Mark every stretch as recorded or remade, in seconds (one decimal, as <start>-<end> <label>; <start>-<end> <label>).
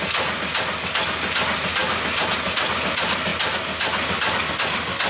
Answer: 0.0-5.1 recorded